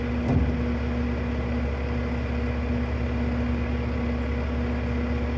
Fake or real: real